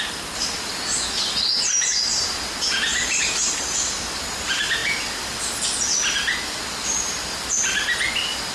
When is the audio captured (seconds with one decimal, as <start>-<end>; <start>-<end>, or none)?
0.0-8.5